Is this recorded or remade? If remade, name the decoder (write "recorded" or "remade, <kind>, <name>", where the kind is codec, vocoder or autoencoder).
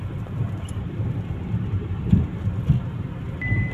remade, vocoder, BigVGAN v2